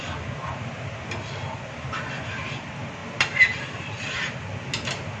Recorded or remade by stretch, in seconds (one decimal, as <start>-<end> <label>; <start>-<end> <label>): 0.0-5.2 recorded